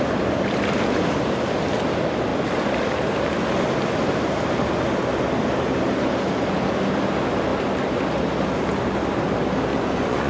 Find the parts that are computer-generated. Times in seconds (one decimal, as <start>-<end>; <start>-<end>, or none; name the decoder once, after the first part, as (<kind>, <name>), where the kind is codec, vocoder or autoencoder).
9.7-10.3 (vocoder, Vocos)